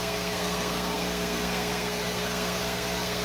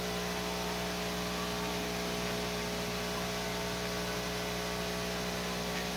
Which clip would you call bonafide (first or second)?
second